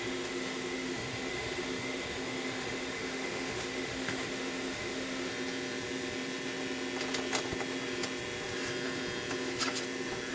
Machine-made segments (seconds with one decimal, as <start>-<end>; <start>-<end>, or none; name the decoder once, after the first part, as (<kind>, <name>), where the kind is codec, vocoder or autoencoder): 0.0-5.3 (autoencoder, DAC-VAE)